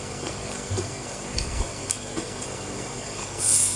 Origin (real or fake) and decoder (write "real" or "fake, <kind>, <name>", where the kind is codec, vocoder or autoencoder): fake, codec, SNAC